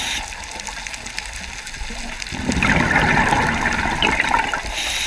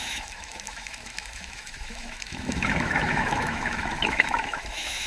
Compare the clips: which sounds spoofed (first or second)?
second